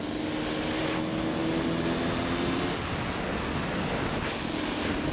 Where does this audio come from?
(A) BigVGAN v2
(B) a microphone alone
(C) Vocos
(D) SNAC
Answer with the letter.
B